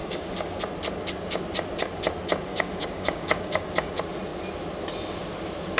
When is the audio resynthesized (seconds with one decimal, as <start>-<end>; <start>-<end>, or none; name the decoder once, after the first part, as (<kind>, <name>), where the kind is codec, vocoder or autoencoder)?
0.0-0.6 (codec, DAC); 2.5-3.9